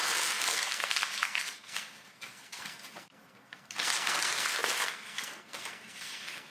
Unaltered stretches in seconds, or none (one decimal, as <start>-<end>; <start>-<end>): none